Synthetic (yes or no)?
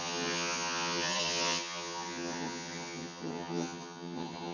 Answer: yes